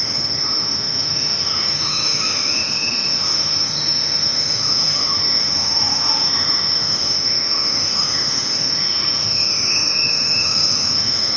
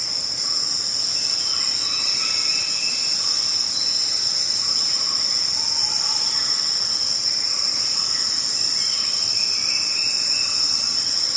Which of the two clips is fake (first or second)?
first